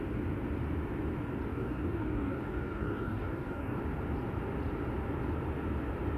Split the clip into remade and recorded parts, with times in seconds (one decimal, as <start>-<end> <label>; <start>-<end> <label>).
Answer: 0.0-1.5 recorded; 1.5-3.8 remade; 3.8-6.2 recorded